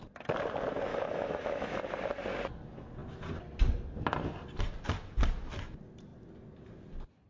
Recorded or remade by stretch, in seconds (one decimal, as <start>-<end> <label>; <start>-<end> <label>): 0.0-0.9 recorded; 0.9-1.8 remade; 1.8-7.3 recorded